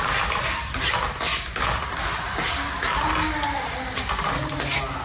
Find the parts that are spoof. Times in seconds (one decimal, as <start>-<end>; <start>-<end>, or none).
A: none